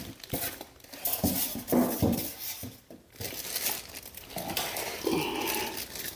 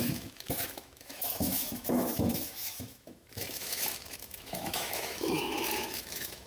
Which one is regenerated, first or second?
second